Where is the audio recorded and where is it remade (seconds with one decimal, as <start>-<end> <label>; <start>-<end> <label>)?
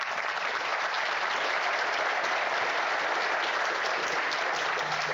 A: 0.0-5.1 recorded